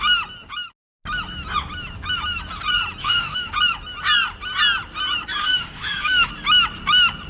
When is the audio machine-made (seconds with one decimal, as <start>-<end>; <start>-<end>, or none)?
3.0-3.5; 5.4-6.3